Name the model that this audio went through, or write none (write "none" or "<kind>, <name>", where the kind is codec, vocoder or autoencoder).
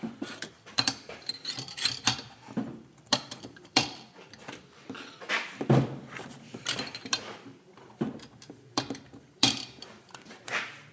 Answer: vocoder, BigVGAN v2